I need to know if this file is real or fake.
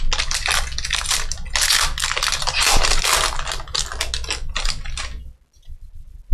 real